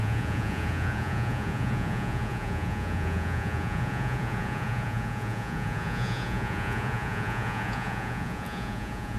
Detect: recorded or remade remade